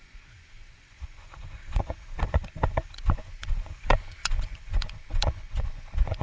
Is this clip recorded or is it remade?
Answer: remade